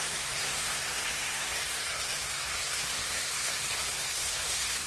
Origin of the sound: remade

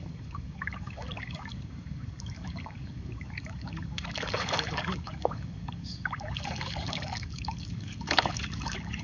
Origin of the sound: remade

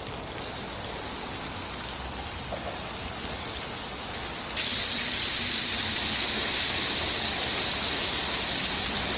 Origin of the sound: recorded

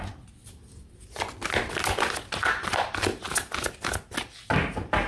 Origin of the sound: recorded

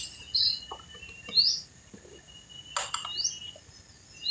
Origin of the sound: recorded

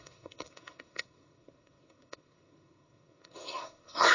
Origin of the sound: remade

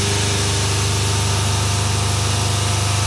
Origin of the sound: recorded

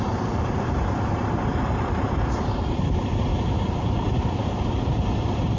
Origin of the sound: remade